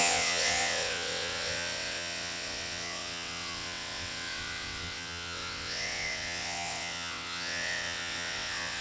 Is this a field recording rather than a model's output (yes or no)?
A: no